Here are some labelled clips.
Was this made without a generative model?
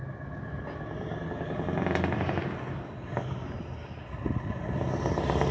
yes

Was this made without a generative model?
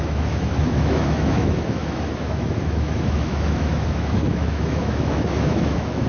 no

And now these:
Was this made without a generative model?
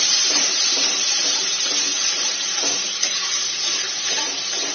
no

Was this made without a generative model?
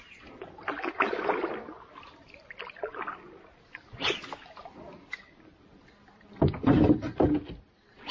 yes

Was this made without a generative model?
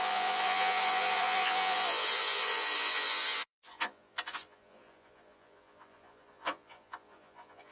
no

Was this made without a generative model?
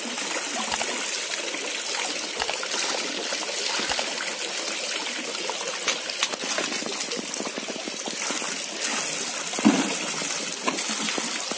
yes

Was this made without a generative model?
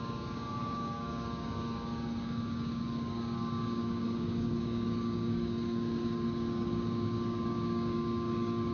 no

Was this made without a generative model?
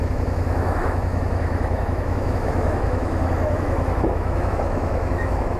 no